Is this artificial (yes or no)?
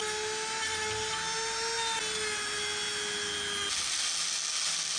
no